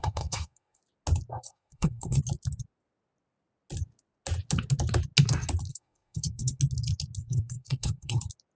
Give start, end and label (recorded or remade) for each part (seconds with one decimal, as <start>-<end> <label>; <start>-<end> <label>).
0.0-0.8 remade; 0.8-1.3 recorded; 1.3-2.2 remade; 2.2-5.7 recorded; 5.7-6.6 remade; 6.6-7.2 recorded; 7.2-8.2 remade; 8.2-8.6 recorded